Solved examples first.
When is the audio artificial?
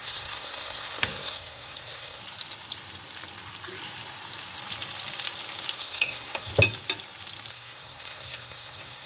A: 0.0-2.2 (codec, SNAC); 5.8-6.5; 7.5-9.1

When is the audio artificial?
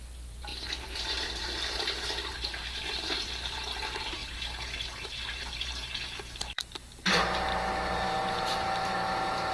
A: 0.0-9.5 (vocoder, BigVGAN v2)